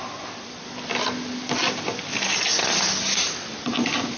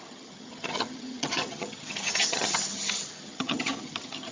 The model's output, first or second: second